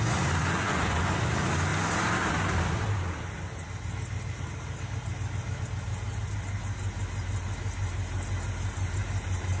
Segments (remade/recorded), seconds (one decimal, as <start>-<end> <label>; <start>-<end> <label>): 0.0-0.4 recorded; 0.4-1.2 remade; 1.2-9.6 recorded